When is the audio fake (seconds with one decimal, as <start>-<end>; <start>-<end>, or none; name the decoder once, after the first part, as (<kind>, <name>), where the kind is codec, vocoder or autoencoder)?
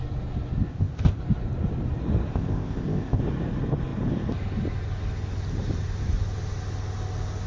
0.7-1.2 (codec, ZipCodec); 2.3-3.2